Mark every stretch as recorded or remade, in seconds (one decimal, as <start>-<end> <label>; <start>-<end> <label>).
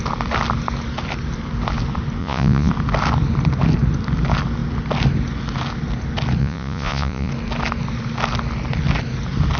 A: 0.0-2.2 recorded; 2.2-2.7 remade; 2.7-6.4 recorded; 6.4-7.3 remade; 7.3-9.6 recorded